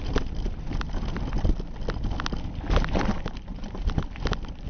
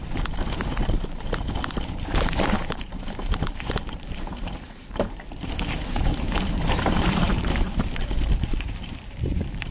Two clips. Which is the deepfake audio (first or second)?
second